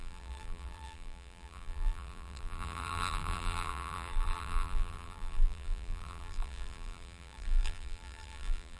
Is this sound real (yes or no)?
no